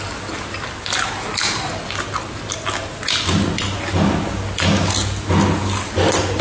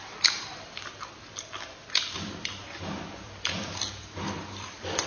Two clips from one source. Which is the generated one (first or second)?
second